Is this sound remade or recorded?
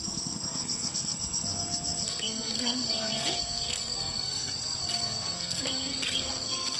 remade